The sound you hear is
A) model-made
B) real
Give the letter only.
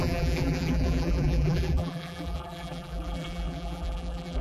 A